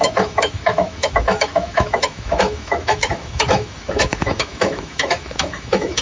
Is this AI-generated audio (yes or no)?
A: yes